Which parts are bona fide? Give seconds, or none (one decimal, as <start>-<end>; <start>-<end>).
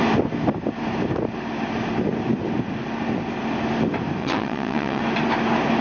0.0-4.2; 5.0-5.8